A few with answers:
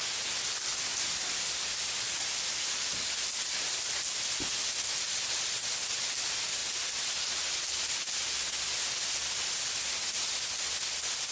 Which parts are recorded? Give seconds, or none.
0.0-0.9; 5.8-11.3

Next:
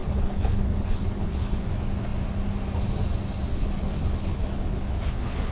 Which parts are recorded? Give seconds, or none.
1.7-3.5

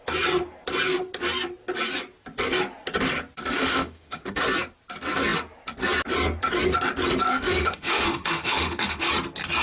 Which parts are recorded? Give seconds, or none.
0.0-3.6; 4.4-7.3; 9.1-9.6

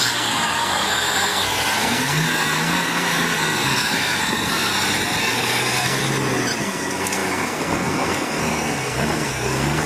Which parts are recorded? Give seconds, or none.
4.7-5.2; 6.0-6.6

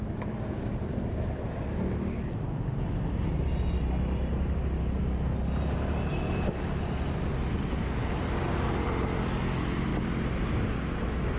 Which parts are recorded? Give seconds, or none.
0.0-11.4

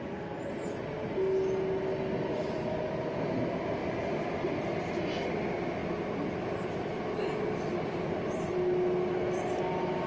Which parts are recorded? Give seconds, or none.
0.0-10.1

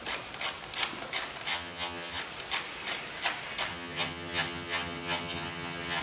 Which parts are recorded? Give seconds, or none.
0.0-1.5; 2.2-3.7